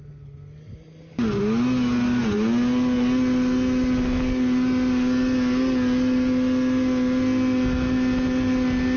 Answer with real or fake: real